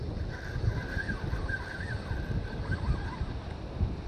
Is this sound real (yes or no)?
yes